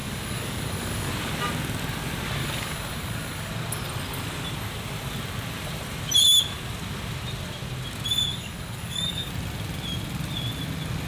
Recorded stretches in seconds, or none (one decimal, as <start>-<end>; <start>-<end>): 1.1-2.4; 3.5-8.3; 9.3-11.1